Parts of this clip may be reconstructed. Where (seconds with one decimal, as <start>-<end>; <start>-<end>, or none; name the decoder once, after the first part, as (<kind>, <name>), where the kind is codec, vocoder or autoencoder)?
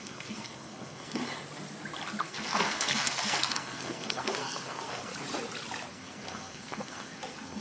0.0-1.2 (codec, SNAC); 2.2-5.1; 5.9-7.6